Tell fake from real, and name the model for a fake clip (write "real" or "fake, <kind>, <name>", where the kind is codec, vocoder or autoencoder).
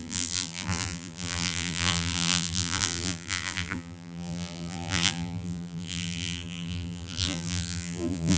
fake, vocoder, BigVGAN v2